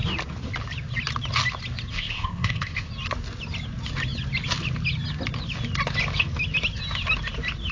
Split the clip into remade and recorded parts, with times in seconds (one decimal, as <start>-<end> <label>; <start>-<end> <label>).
0.0-1.9 recorded; 1.9-2.9 remade; 2.9-7.7 recorded